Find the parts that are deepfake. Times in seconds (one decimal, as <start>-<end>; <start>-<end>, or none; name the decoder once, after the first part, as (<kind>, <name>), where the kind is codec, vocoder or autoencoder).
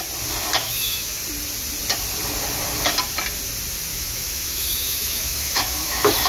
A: 0.6-1.2 (autoencoder, DAC-VAE); 3.9-6.3